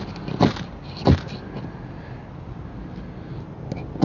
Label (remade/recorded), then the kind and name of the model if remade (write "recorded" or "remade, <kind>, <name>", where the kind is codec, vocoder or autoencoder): recorded